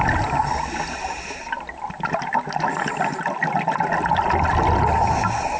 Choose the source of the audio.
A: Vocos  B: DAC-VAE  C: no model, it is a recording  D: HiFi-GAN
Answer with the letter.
C